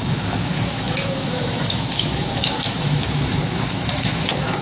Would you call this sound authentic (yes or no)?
no